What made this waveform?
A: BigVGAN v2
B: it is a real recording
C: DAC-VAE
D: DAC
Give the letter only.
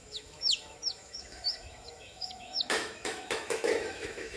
C